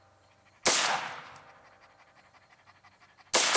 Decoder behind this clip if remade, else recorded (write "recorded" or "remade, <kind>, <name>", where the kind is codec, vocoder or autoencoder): recorded